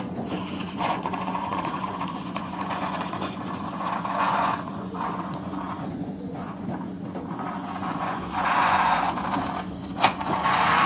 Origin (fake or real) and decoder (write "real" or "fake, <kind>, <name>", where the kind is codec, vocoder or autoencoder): fake, vocoder, Vocos